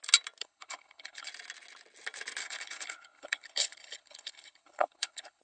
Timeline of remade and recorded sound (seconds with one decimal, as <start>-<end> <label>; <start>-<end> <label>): 0.0-0.4 recorded; 0.4-1.3 remade; 1.3-2.4 recorded; 2.4-5.4 remade